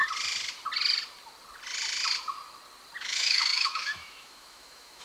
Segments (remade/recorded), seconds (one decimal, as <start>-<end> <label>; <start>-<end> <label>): 0.0-3.0 recorded; 3.0-5.0 remade